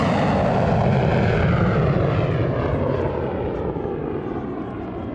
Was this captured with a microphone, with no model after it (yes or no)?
yes